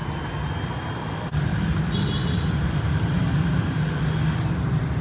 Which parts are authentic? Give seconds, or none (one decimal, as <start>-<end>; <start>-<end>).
0.0-5.0